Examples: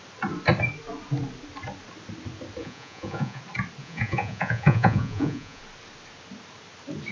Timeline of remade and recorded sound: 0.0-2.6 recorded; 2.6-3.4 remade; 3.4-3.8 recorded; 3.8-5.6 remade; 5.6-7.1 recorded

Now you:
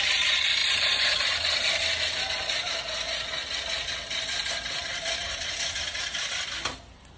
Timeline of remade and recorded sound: 0.0-7.2 recorded

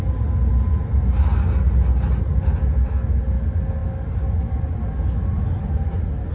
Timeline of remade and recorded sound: 0.0-6.3 recorded

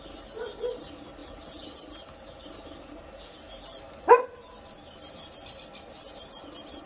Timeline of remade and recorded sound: 0.0-6.9 recorded